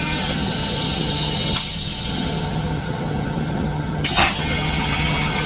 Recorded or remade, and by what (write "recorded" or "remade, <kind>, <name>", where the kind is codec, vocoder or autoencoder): remade, vocoder, HiFi-GAN